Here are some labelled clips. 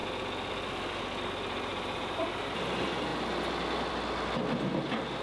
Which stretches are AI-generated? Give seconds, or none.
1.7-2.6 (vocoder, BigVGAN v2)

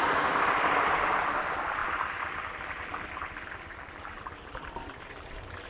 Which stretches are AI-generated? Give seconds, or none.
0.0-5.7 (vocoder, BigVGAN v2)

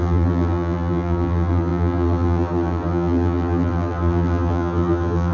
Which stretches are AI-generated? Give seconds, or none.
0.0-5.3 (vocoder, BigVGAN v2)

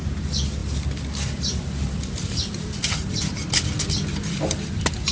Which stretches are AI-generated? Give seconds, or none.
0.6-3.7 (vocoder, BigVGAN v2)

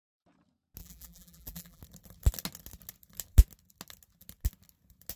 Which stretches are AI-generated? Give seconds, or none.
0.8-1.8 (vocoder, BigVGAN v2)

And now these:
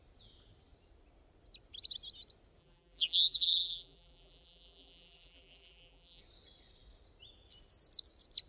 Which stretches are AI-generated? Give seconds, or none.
2.6-6.2 (vocoder, BigVGAN v2)

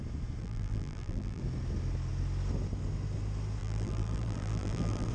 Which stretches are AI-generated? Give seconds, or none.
0.4-1.4 (vocoder, BigVGAN v2); 3.6-5.1